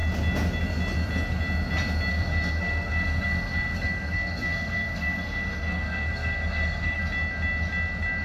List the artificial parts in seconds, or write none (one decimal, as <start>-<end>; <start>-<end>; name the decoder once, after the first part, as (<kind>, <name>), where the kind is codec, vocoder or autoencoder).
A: 2.1-7.0 (codec, SNAC)